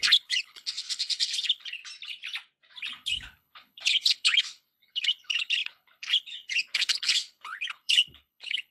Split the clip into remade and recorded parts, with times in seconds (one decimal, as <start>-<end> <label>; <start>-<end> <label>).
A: 0.0-1.8 remade; 1.8-2.8 recorded; 2.8-8.7 remade